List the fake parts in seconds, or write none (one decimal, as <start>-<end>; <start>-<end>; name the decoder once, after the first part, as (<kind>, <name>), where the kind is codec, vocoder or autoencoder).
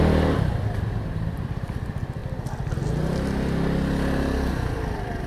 0.0-2.2 (vocoder, BigVGAN v2); 4.5-5.3